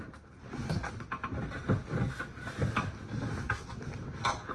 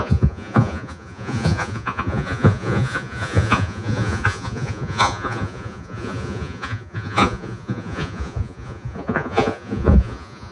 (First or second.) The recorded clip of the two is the first